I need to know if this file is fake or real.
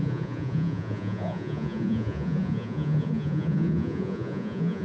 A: fake